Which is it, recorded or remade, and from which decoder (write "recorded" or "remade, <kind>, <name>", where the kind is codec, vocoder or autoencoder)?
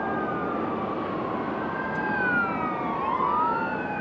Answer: recorded